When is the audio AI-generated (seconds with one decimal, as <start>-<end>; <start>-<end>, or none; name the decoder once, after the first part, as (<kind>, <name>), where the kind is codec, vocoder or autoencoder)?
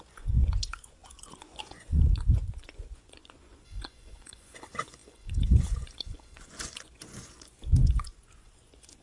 0.0-9.0 (vocoder, Vocos)